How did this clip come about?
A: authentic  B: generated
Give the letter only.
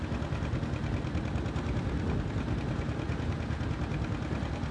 A